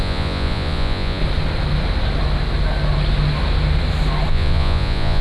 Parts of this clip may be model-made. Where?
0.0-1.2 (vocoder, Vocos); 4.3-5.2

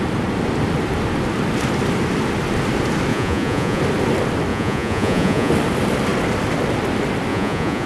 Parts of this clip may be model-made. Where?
3.1-3.8 (vocoder, Vocos); 4.5-5.5; 7.3-7.9

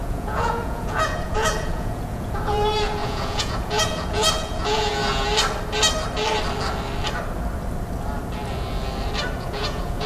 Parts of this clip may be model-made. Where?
0.0-5.0 (vocoder, Vocos); 9.4-10.1

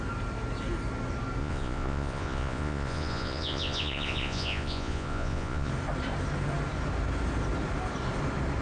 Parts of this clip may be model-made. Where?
1.4-5.7 (vocoder, Vocos)

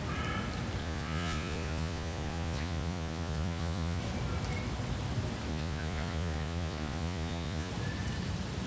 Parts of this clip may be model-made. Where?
0.8-4.0 (vocoder, Vocos); 5.5-7.7

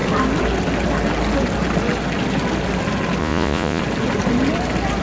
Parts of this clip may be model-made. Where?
3.2-3.8 (vocoder, Vocos)

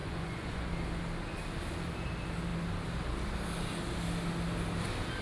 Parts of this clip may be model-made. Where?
0.0-0.7 (vocoder, Vocos)

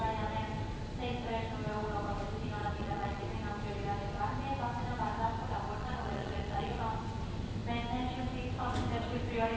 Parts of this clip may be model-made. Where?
2.6-3.2 (vocoder, Vocos); 5.8-6.8